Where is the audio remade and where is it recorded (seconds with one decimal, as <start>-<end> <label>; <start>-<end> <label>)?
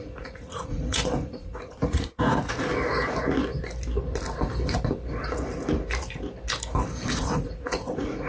0.0-2.7 remade; 2.7-7.2 recorded; 7.2-8.3 remade